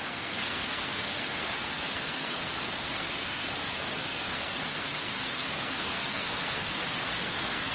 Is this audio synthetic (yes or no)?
yes